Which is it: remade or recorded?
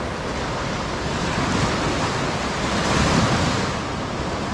recorded